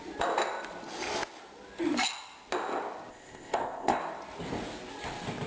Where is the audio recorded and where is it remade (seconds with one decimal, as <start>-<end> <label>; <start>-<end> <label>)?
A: 0.0-3.1 recorded; 3.1-4.0 remade; 4.0-5.5 recorded